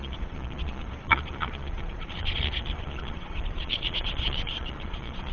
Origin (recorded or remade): remade